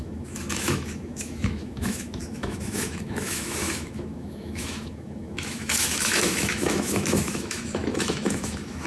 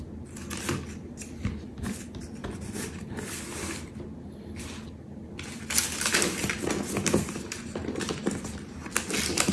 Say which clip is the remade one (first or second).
first